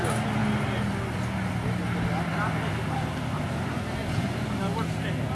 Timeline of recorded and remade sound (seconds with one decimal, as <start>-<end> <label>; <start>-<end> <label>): 0.0-5.3 recorded

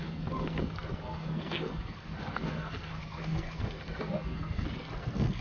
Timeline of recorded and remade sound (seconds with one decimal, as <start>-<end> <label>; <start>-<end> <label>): 0.0-5.4 remade

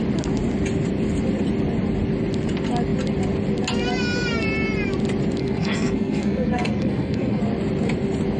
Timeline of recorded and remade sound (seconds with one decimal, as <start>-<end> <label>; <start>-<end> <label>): 0.0-5.4 recorded; 5.4-7.4 remade; 7.4-8.4 recorded

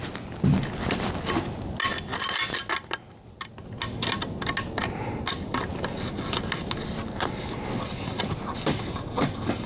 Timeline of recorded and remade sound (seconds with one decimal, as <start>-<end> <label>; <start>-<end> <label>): 0.0-9.7 recorded

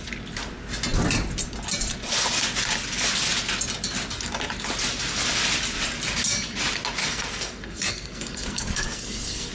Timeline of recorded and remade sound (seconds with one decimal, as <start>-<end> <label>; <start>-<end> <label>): 0.0-7.0 recorded; 7.0-9.5 remade